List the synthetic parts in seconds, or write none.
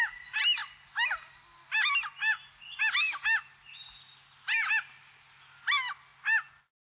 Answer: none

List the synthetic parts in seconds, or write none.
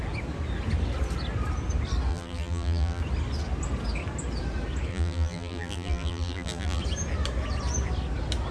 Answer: 2.1-3.0 (vocoder, BigVGAN v2); 4.9-6.8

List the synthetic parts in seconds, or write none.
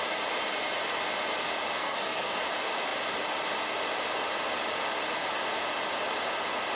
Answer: 1.8-2.4 (codec, SNAC)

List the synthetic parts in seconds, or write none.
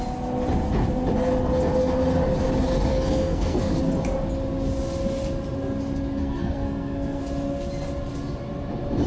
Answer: 2.9-3.8 (codec, SNAC); 6.2-7.2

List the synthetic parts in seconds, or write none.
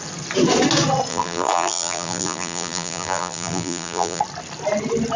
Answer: 1.1-4.2 (vocoder, BigVGAN v2)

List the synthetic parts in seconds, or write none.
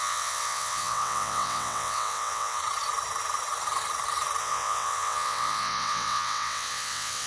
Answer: 0.0-2.6 (vocoder, WaveNeXt); 4.4-7.3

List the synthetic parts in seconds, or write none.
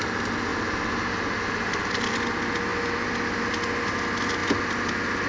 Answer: 0.5-2.1 (vocoder, BigVGAN v2)